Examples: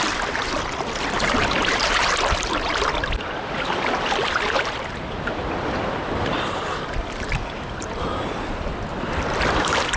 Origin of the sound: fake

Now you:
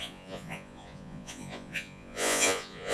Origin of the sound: fake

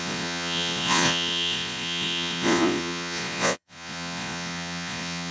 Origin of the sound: fake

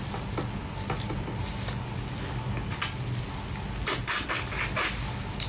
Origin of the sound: real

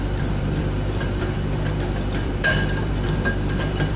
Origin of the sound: fake